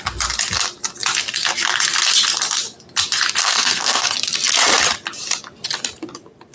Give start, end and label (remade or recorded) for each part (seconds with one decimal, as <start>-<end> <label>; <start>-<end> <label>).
0.0-3.4 recorded; 3.4-4.1 remade; 4.1-6.5 recorded